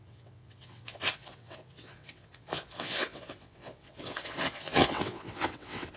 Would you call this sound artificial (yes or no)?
yes